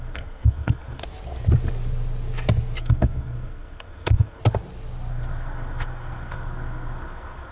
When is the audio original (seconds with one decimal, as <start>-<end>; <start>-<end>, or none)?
1.0-2.8; 4.4-5.1